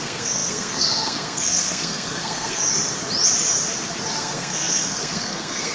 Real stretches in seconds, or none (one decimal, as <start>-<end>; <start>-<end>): 2.7-4.1